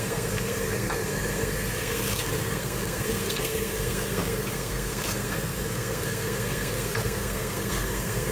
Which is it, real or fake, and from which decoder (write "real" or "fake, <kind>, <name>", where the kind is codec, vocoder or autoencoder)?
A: fake, codec, SNAC